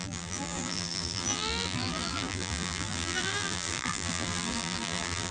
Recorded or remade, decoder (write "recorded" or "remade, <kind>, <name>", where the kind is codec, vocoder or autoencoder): remade, vocoder, BigVGAN v2